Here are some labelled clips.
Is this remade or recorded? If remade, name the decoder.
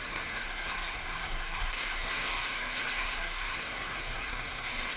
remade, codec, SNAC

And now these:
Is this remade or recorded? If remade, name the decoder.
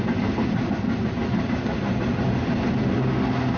recorded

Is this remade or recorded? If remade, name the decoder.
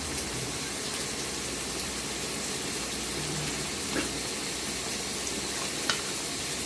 recorded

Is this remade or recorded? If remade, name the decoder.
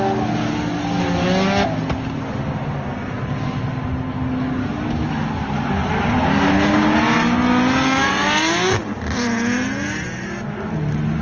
recorded